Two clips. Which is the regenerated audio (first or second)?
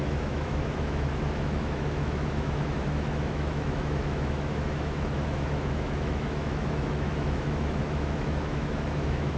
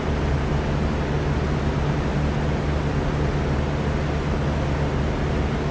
first